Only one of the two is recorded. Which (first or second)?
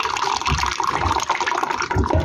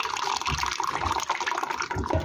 second